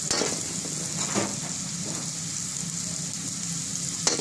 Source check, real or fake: real